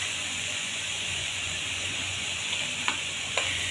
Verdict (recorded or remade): remade